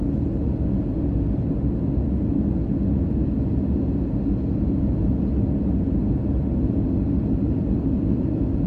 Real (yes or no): yes